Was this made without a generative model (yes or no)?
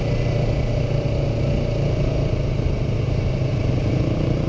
yes